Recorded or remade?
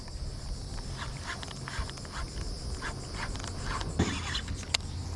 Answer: recorded